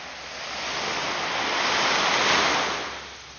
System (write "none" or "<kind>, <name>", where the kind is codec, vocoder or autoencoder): none